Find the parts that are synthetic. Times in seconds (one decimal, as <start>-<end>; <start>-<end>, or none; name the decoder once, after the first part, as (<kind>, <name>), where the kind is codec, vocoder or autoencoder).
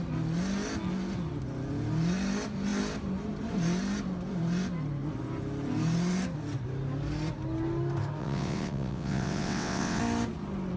8.2-10.0 (vocoder, WaveNeXt)